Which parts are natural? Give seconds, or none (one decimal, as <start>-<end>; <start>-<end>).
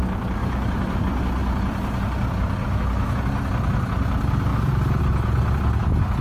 0.0-0.4; 1.0-2.6; 3.2-6.2